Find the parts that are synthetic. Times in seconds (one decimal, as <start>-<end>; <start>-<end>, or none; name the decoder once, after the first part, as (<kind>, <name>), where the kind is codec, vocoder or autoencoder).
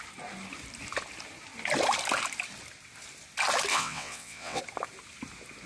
3.7-4.6 (vocoder, WaveNeXt)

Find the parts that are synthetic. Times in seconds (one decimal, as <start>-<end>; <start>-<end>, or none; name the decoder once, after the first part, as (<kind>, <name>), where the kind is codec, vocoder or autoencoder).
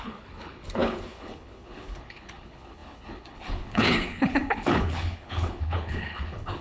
0.0-6.6 (codec, HILCodec)